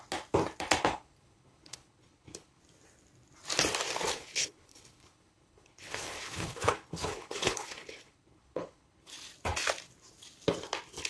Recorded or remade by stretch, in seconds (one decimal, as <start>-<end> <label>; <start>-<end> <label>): 0.0-0.8 recorded; 0.8-2.6 remade; 2.6-4.1 recorded; 4.1-9.1 remade; 9.1-11.1 recorded